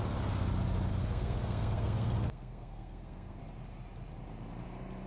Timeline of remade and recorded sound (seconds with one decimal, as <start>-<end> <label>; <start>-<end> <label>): 0.0-0.9 recorded; 0.9-3.4 remade; 3.4-5.1 recorded